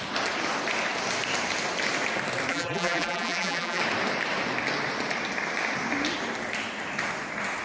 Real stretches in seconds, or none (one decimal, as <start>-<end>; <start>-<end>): 0.0-2.5; 3.8-7.6

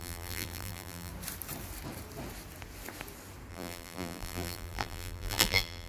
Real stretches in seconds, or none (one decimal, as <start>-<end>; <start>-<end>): 1.1-3.5

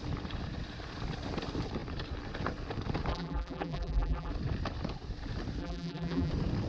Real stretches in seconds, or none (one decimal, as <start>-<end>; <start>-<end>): 0.0-3.1; 4.3-5.6; 6.3-6.7

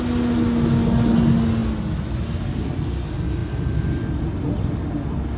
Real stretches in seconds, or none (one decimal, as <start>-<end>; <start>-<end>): 0.0-3.4; 3.9-5.4

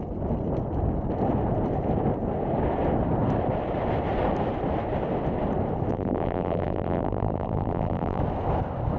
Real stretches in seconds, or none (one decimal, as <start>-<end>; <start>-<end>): 0.0-5.9; 8.2-9.0

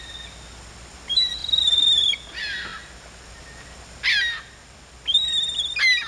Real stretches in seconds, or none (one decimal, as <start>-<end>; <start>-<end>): 0.0-1.4; 2.0-6.1